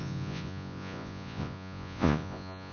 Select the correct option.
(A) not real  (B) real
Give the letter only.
A